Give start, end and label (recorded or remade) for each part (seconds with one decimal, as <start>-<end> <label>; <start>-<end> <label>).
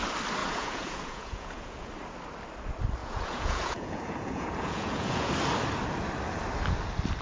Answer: 0.0-0.4 recorded; 0.4-1.9 remade; 1.9-3.0 recorded; 3.0-5.3 remade; 5.3-7.2 recorded